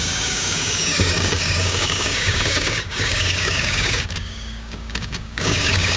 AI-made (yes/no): yes